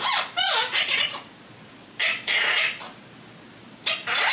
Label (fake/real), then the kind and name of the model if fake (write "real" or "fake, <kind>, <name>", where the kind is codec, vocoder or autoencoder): real